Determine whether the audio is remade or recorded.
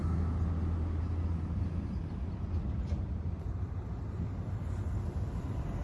recorded